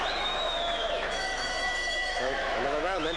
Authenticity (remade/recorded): remade